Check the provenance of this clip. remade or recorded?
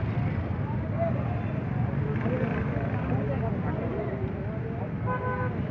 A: recorded